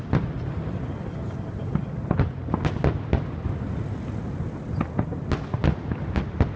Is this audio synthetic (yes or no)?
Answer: no